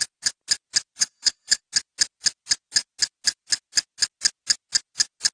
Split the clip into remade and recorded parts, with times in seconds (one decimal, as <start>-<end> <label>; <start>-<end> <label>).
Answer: 0.0-1.0 recorded; 1.0-1.6 remade; 1.6-5.3 recorded